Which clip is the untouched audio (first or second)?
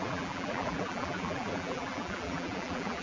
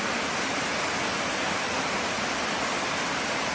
second